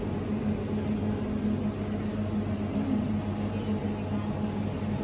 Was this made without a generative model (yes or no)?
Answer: yes